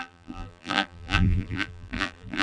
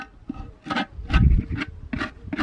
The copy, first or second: first